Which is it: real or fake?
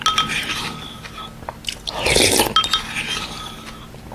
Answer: real